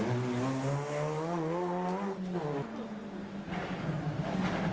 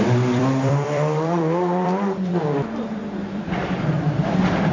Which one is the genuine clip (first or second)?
first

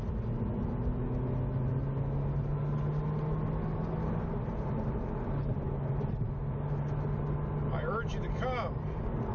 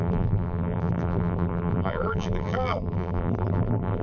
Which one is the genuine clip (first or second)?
first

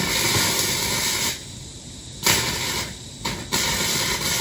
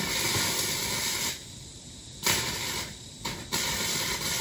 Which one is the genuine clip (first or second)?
first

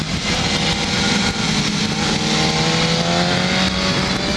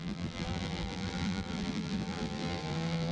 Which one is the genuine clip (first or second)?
first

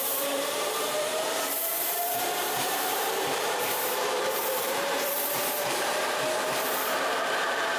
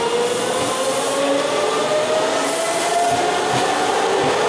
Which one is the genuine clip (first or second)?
second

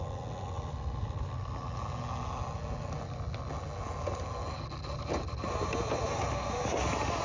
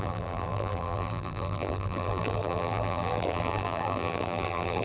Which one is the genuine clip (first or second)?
first